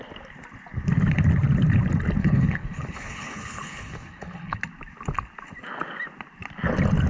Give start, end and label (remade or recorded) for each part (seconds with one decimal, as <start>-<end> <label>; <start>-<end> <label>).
0.0-2.2 recorded; 2.2-4.6 remade; 4.6-7.1 recorded